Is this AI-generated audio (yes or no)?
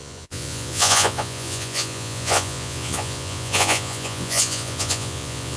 yes